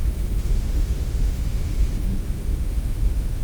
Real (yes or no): no